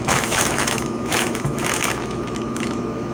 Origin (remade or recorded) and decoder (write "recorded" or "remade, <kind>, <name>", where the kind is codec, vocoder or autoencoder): remade, autoencoder, DAC-VAE